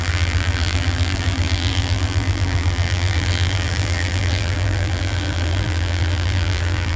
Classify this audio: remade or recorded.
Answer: remade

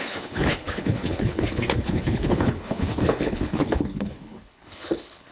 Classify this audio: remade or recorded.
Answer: remade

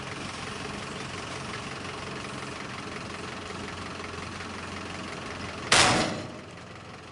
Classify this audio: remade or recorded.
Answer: recorded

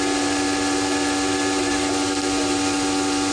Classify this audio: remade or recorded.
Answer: recorded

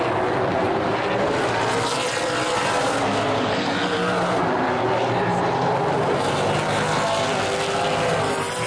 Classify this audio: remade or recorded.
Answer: recorded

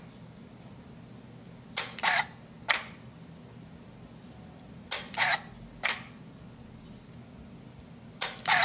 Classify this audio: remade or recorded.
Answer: recorded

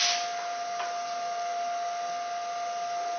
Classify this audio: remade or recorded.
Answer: recorded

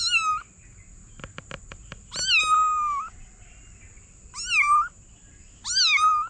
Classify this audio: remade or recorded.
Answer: recorded